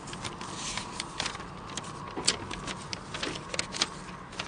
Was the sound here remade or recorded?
recorded